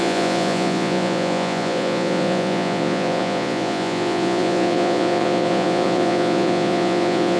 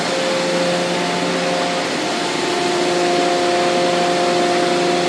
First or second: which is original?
second